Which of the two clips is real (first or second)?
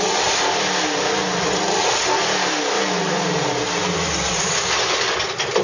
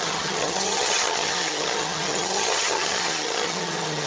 first